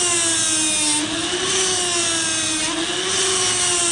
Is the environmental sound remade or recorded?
recorded